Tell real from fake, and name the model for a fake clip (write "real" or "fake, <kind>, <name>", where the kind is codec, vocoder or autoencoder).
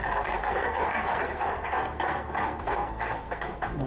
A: fake, codec, SNAC